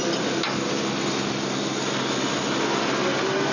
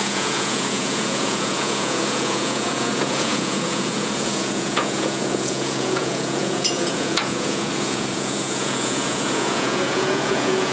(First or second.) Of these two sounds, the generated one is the second